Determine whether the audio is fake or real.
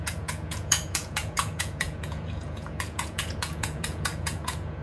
fake